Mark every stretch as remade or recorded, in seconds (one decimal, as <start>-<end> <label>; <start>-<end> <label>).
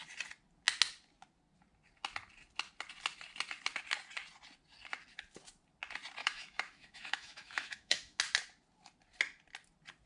0.0-6.2 recorded; 6.2-8.2 remade; 8.2-10.1 recorded